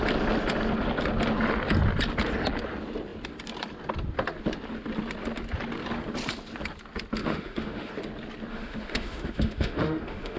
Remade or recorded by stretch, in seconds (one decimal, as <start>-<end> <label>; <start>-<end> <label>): 0.0-7.2 recorded; 7.2-7.9 remade; 7.9-8.5 recorded; 8.5-10.4 remade